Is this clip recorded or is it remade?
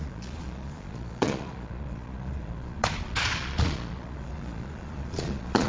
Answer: remade